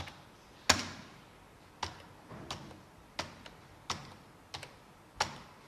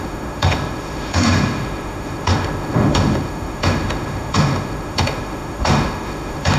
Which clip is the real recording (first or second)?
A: first